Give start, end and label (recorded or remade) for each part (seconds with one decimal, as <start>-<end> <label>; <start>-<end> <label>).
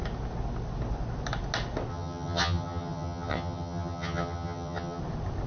0.0-1.9 recorded; 1.9-5.0 remade; 5.0-5.5 recorded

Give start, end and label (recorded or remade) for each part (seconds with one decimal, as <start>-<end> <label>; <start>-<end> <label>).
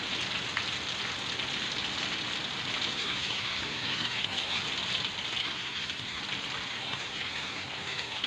0.0-2.9 recorded; 2.9-4.6 remade; 4.6-5.4 recorded; 5.4-6.2 remade; 6.2-6.7 recorded; 6.7-8.3 remade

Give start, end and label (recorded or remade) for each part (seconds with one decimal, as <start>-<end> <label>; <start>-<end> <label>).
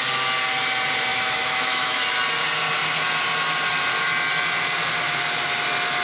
0.0-1.1 recorded; 1.1-2.1 remade; 2.1-6.0 recorded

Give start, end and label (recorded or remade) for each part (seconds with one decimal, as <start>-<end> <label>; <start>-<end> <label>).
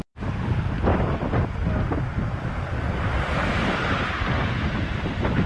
0.0-5.5 recorded